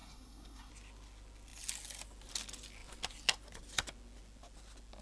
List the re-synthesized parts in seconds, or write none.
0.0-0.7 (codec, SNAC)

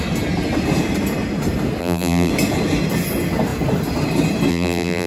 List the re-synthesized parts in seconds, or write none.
1.8-2.3 (vocoder, BigVGAN v2); 4.5-5.1